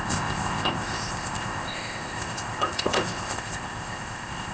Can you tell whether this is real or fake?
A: fake